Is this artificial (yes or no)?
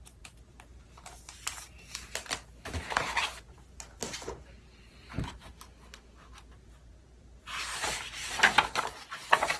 yes